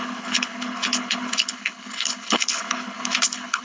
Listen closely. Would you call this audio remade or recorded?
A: remade